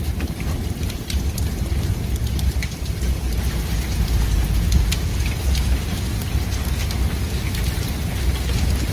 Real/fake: real